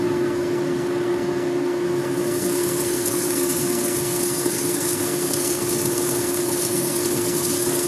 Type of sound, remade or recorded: remade